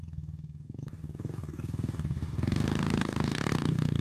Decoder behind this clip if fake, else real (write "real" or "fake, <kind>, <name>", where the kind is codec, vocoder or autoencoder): fake, codec, DAC